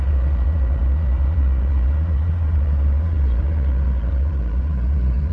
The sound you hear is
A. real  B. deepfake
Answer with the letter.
B